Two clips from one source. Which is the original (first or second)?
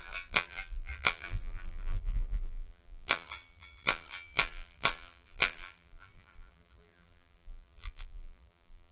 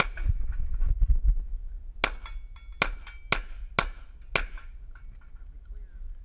second